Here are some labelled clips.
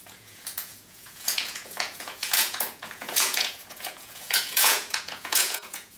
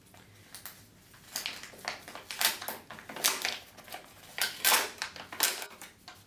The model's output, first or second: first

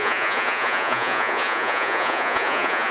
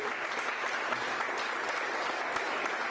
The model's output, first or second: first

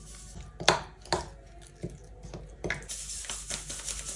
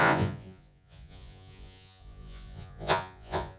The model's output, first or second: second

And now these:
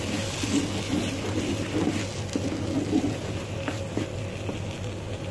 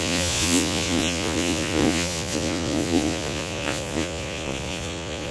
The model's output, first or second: second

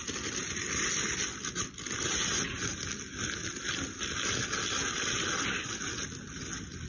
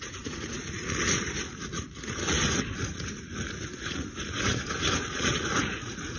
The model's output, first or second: second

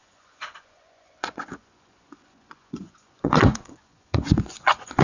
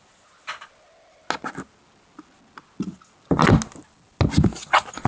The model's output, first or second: first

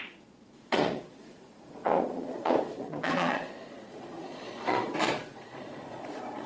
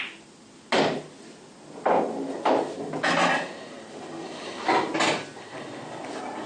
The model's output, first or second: first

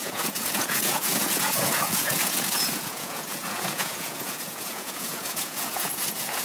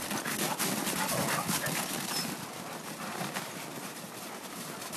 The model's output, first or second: first